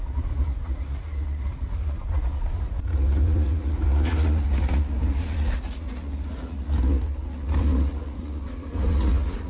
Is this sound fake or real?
fake